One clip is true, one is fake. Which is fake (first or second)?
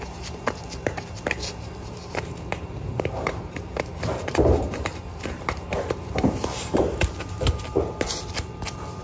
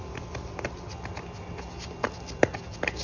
first